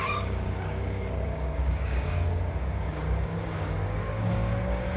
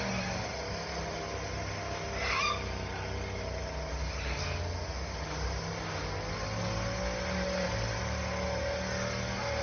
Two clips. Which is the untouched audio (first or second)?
second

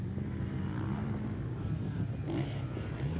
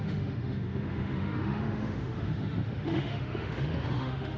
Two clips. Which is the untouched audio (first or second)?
first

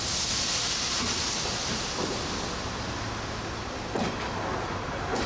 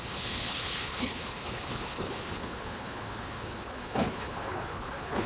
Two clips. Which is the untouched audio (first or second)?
first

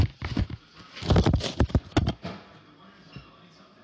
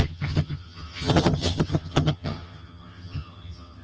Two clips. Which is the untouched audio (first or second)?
first